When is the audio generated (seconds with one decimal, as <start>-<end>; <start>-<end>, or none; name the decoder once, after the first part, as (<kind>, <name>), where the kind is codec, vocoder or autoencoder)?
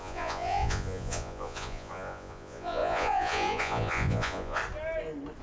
0.0-4.6 (vocoder, Vocos)